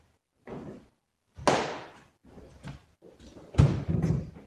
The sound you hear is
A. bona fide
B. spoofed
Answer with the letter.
A